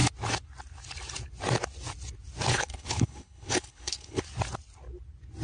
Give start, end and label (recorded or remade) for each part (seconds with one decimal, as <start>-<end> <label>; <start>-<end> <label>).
0.0-2.5 recorded; 2.5-4.2 remade; 4.2-5.4 recorded